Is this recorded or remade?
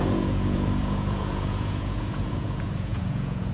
remade